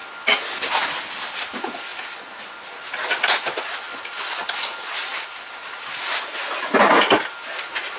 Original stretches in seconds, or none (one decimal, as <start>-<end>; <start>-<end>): 0.0-8.0